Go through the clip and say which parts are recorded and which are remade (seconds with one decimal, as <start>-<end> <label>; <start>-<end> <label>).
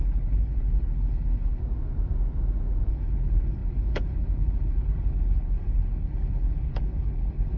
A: 0.0-1.6 remade; 1.6-2.9 recorded; 2.9-7.6 remade